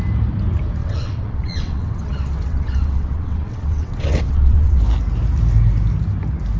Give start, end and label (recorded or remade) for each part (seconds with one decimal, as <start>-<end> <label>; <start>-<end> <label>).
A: 0.0-0.8 recorded; 0.8-4.8 remade; 4.8-6.6 recorded